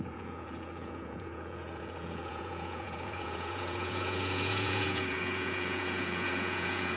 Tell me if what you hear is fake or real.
fake